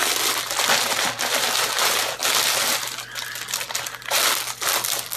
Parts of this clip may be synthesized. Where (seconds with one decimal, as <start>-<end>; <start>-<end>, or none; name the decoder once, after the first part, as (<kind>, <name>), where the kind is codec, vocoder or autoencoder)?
none